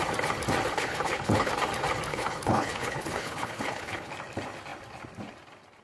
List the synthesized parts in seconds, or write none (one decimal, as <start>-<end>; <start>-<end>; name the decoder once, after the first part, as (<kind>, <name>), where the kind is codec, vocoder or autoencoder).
0.7-1.5 (codec, HILCodec); 2.1-4.1

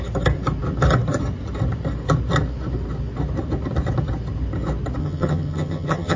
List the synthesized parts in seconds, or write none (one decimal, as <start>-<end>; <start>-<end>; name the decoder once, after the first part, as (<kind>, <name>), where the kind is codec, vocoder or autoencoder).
5.0-6.2 (vocoder, HiFi-GAN)

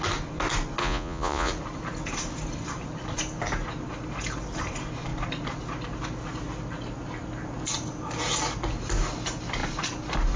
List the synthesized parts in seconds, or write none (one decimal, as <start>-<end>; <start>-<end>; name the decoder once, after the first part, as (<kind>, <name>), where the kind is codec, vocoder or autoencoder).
0.8-1.5 (vocoder, Vocos)

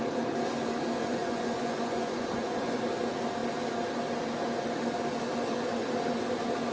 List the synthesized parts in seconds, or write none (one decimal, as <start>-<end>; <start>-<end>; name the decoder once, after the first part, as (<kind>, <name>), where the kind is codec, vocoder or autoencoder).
1.0-2.8 (vocoder, Vocos)

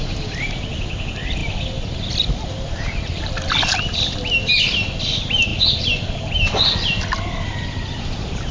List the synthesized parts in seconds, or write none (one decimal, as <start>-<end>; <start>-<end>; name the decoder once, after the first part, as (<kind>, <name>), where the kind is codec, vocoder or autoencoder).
none